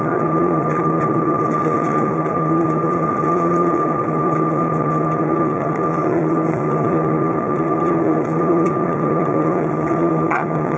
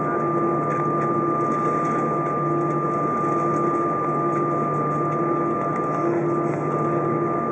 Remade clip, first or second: first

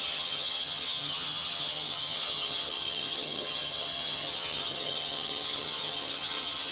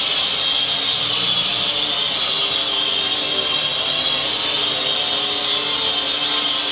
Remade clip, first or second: first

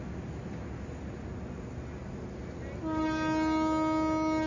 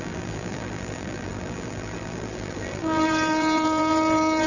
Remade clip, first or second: second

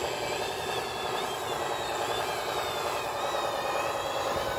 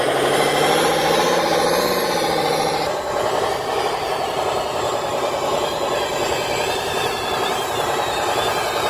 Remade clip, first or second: second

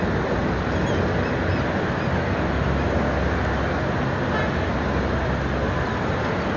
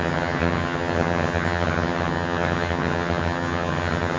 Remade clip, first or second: second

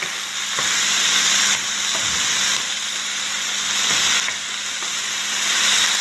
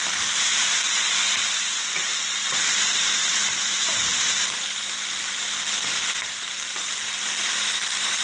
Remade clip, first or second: second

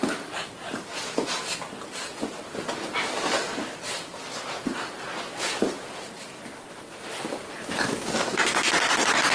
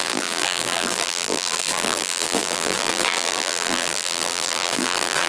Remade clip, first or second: second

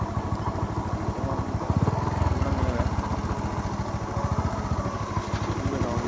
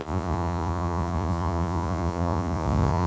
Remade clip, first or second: second